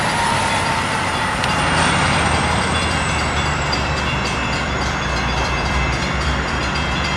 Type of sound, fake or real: fake